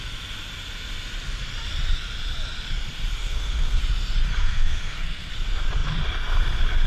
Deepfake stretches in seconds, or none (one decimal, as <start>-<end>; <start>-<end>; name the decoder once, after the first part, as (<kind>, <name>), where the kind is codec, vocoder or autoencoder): 3.2-3.8 (codec, SNAC); 4.4-5.3